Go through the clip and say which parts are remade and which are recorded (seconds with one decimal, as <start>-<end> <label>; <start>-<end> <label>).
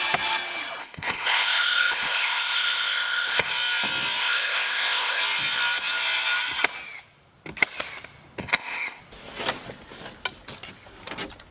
0.0-0.8 recorded; 0.8-3.5 remade; 3.5-4.2 recorded; 4.2-5.2 remade; 5.2-8.4 recorded; 8.4-9.0 remade; 9.0-11.5 recorded